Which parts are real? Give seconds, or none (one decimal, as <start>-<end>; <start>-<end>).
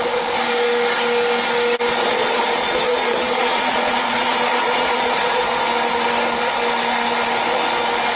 0.0-2.0; 5.6-8.2